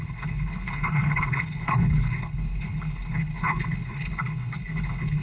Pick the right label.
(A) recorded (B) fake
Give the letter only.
B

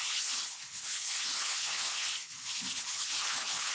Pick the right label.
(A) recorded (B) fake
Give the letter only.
B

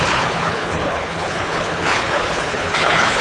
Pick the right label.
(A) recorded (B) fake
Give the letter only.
B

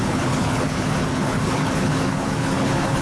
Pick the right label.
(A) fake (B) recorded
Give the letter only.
A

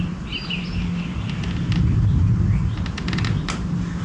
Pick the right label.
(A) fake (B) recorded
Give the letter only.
B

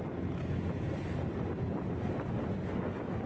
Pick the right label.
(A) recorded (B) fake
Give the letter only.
A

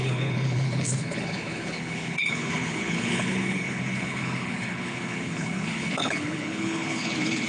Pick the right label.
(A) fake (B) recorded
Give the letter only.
A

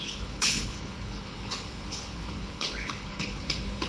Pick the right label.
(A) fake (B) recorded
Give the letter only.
A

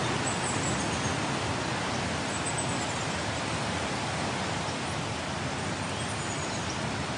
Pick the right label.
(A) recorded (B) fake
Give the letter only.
A